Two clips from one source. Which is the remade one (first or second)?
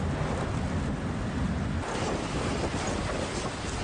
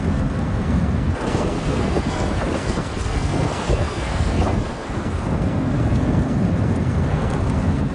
second